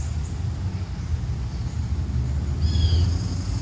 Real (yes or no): yes